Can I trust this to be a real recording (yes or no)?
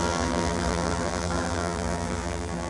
no